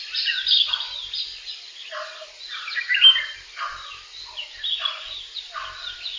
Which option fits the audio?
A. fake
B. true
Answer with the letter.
B